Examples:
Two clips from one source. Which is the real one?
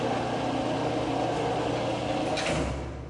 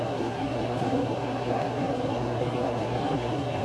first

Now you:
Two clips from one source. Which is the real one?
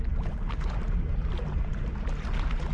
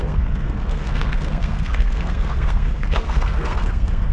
first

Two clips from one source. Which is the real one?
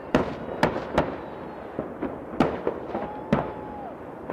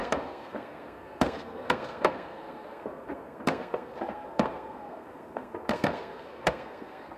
first